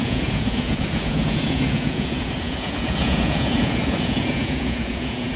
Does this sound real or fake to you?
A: fake